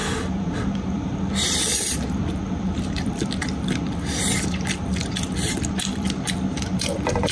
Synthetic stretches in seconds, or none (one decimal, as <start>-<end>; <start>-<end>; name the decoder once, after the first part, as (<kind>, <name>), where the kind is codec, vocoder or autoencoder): 0.0-7.3 (vocoder, BigVGAN v2)